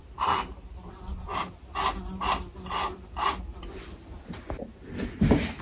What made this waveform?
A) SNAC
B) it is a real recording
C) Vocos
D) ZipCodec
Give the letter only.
B